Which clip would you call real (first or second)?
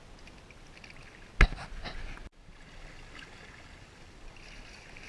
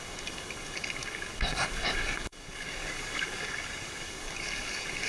first